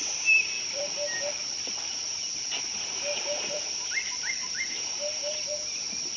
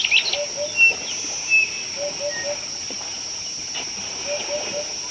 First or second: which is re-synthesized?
first